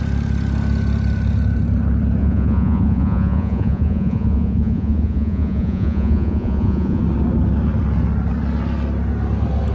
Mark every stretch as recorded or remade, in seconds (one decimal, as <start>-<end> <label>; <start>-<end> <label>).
0.0-2.2 recorded; 2.2-7.0 remade; 7.0-9.7 recorded